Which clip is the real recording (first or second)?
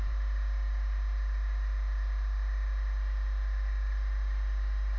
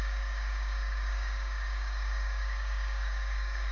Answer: first